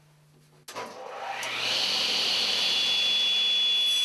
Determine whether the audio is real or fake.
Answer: real